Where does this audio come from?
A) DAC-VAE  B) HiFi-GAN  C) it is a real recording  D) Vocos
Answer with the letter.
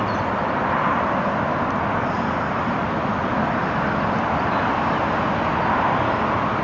C